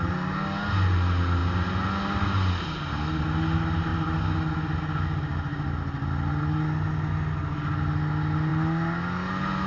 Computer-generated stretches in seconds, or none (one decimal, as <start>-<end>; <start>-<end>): none